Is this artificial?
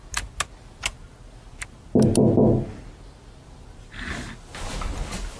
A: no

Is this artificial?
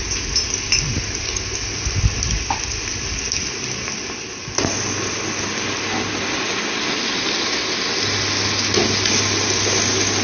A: no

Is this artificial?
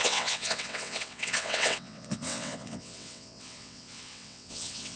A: yes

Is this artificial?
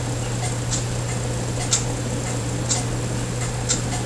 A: no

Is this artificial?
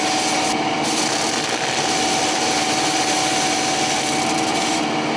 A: no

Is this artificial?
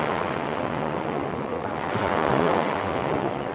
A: yes